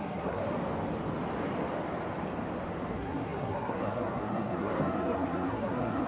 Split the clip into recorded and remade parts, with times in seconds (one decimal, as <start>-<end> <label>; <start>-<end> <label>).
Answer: 0.0-0.4 remade; 0.4-2.9 recorded; 2.9-6.1 remade